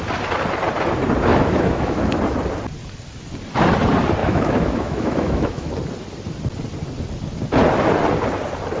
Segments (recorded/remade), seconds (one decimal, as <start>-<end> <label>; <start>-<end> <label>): 0.0-1.3 recorded; 1.3-2.1 remade; 2.1-4.2 recorded; 4.2-5.7 remade; 5.7-8.8 recorded